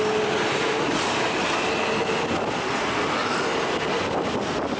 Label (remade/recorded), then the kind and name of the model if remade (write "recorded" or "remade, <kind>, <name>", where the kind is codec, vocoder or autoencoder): recorded